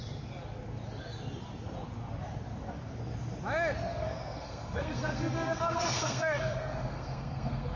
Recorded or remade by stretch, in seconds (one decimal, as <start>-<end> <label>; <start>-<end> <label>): 0.0-3.9 recorded; 3.9-7.8 remade